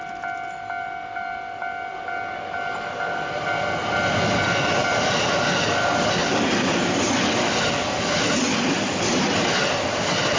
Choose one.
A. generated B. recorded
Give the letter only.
B